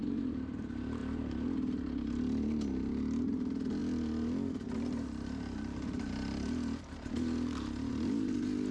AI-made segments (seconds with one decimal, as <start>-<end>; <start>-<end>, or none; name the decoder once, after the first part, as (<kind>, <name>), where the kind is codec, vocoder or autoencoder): none